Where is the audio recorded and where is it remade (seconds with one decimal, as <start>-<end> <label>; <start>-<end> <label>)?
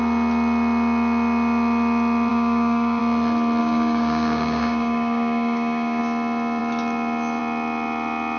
0.0-2.3 recorded; 2.3-3.0 remade; 3.0-3.6 recorded; 3.6-6.0 remade; 6.0-8.4 recorded